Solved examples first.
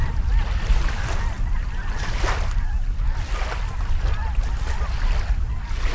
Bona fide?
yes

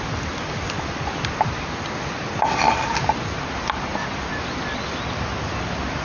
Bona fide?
yes